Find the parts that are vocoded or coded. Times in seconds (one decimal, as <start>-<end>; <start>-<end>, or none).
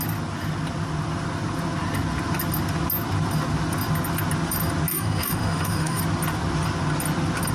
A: 4.9-6.0